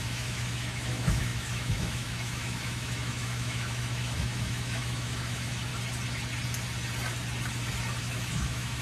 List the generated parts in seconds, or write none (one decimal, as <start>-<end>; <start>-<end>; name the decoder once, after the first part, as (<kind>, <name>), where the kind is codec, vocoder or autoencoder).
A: 0.0-5.7 (autoencoder, DAC-VAE); 8.0-8.8

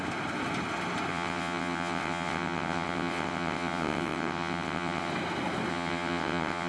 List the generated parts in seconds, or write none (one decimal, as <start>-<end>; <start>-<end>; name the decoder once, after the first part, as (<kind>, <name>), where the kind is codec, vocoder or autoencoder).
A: 1.1-5.1 (vocoder, WaveNeXt); 5.7-6.7

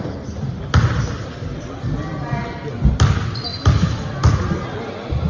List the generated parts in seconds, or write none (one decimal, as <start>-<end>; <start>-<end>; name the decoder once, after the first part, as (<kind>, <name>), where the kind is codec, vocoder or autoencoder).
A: none

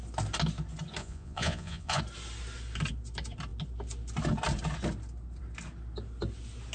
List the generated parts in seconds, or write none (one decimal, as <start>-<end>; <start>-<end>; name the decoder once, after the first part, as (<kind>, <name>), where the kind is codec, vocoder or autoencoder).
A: 1.0-2.0 (vocoder, Vocos)

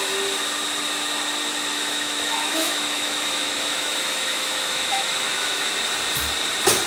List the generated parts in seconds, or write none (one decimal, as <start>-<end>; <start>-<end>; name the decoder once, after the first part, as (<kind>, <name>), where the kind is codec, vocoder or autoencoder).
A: 1.7-5.7 (autoencoder, DAC-VAE)

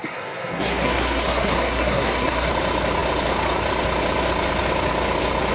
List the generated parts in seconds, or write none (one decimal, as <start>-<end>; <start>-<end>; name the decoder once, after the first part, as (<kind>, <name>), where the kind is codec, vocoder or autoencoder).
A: 0.0-2.5 (codec, SNAC)

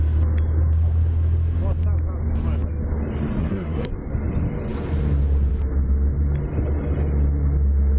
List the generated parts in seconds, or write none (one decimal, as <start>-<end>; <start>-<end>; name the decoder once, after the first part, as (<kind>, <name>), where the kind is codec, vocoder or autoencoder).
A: 3.4-3.9 (codec, SNAC)

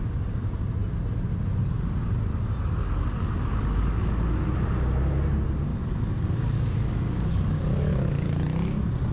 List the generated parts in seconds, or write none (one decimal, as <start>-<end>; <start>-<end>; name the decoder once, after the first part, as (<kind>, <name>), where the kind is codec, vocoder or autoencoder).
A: 2.8-4.2 (codec, DAC); 5.7-8.1